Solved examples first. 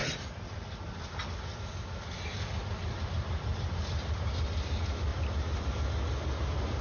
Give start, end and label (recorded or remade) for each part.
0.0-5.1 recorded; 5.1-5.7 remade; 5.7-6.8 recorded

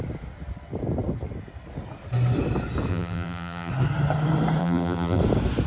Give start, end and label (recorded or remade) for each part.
0.0-2.9 recorded; 2.9-3.7 remade; 3.7-4.6 recorded; 4.6-5.2 remade; 5.2-5.7 recorded

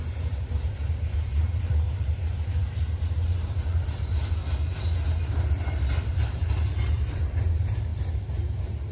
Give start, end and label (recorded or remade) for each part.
0.0-4.4 remade; 4.4-5.2 recorded; 5.2-8.9 remade

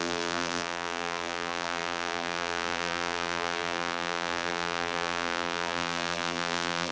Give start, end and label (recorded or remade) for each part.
0.0-6.9 remade

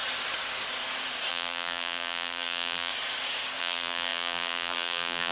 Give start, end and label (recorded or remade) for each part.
0.0-1.3 recorded; 1.3-2.9 remade; 2.9-3.6 recorded; 3.6-5.3 remade

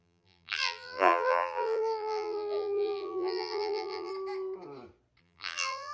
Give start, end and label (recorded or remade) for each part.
0.0-4.1 remade; 4.1-5.2 recorded; 5.2-5.9 remade